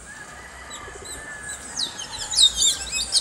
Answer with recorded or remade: recorded